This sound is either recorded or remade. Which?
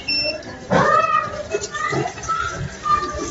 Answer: recorded